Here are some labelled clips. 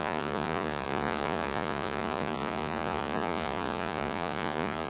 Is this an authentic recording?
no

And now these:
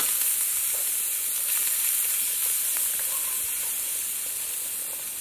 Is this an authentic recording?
yes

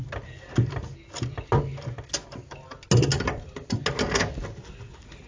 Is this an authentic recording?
yes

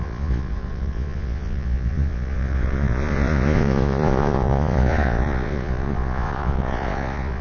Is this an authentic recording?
no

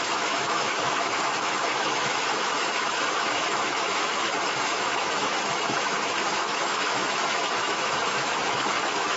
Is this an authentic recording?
no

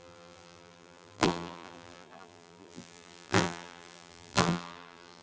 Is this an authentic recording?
no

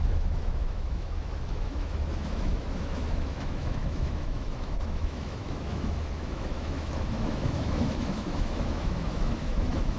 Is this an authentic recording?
no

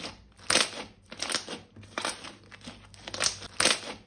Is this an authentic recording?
yes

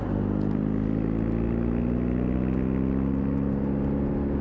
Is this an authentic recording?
yes